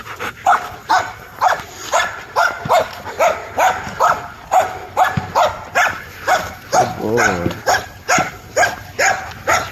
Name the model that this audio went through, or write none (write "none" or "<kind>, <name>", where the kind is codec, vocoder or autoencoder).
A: none